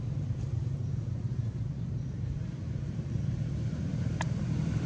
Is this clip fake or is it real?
fake